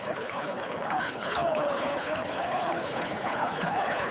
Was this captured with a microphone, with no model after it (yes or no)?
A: no